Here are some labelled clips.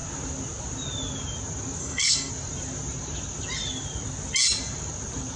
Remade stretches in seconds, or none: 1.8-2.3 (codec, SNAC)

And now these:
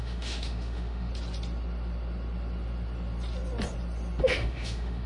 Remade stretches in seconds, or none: 0.0-1.1 (autoencoder, DAC-VAE); 4.2-5.1

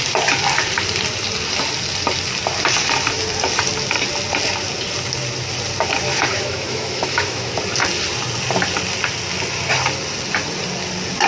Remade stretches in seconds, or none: 6.1-7.5 (autoencoder, DAC-VAE)

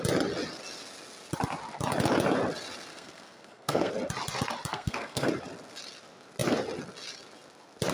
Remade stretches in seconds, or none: 2.9-3.9 (codec, SNAC); 4.7-5.3